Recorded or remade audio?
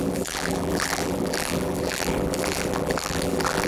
remade